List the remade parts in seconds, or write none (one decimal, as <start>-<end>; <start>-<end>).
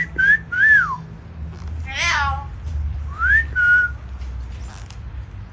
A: none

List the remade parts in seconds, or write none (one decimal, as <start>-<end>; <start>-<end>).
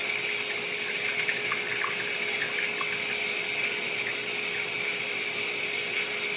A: none